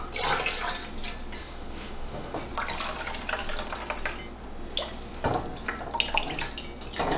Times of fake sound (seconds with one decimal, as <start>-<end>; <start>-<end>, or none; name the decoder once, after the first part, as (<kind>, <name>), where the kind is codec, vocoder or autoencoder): 1.4-2.4 (autoencoder, DAC-VAE)